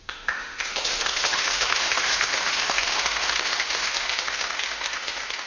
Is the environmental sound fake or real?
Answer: fake